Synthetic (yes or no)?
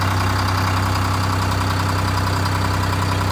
no